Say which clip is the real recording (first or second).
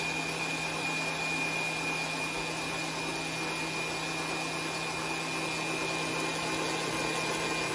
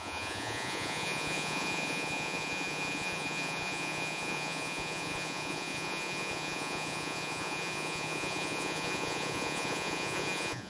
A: first